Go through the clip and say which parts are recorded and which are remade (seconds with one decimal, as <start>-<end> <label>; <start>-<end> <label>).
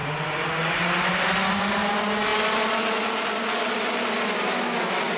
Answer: 0.0-5.2 recorded